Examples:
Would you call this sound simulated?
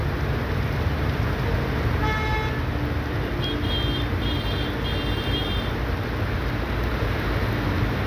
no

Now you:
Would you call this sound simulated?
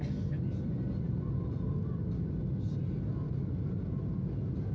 no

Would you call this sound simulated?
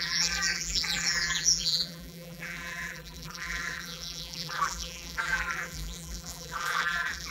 yes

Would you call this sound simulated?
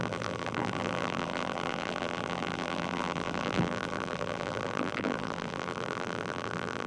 yes